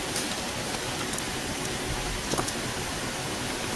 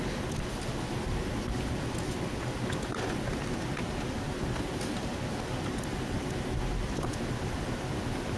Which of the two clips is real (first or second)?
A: second